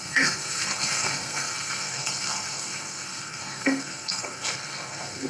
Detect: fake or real fake